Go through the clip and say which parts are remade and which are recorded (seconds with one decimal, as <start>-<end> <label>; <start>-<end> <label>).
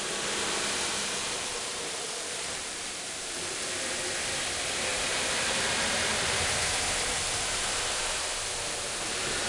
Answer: 0.0-1.2 recorded; 1.2-3.6 remade; 3.6-4.9 recorded; 4.9-6.5 remade; 6.5-7.1 recorded; 7.1-8.0 remade; 8.0-9.5 recorded